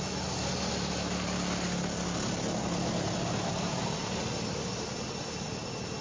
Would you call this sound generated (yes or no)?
no